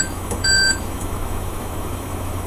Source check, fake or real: fake